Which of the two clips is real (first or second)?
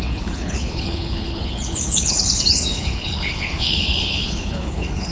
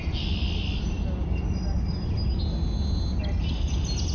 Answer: second